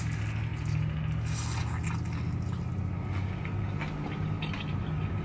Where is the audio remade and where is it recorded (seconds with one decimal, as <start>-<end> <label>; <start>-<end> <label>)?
0.0-5.2 recorded